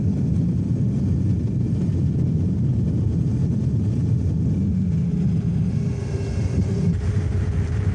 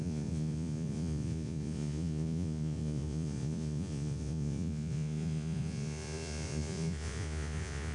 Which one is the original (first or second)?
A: first